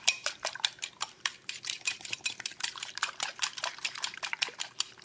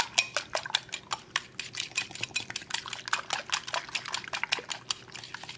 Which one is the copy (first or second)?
first